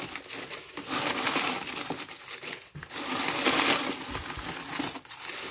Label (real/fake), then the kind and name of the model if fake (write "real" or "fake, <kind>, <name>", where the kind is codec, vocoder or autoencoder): real